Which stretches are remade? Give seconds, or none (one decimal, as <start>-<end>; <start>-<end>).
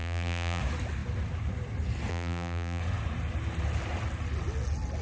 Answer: 0.0-0.6; 2.1-2.8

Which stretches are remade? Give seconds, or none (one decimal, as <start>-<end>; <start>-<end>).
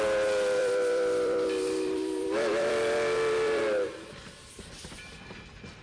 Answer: 0.6-3.6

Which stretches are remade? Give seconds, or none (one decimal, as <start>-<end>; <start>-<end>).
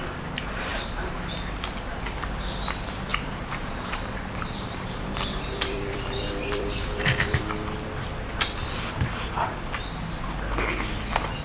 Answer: 0.7-1.3; 3.1-7.4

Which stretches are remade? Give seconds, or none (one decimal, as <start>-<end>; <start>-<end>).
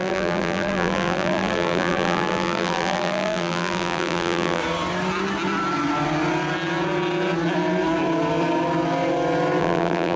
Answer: 0.0-4.6; 9.6-10.2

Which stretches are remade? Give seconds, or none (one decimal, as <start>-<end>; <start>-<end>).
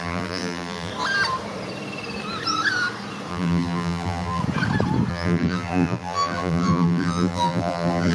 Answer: 0.0-0.9; 3.3-4.4; 5.1-8.1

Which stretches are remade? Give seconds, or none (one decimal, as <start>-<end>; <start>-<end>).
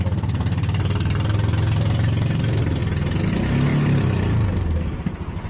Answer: 0.0-2.8; 3.3-5.5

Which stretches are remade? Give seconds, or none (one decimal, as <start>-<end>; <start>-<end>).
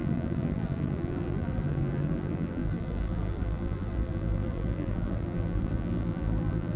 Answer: 0.0-6.8